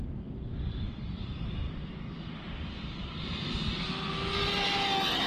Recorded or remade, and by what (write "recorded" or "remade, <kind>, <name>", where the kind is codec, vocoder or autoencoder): recorded